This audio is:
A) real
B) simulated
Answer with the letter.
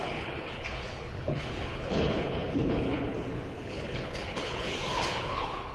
B